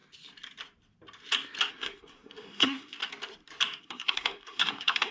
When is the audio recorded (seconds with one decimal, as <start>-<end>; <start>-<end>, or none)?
0.0-1.7; 3.0-3.8